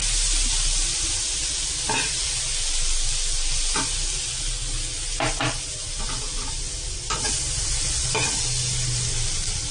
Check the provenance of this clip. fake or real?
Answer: real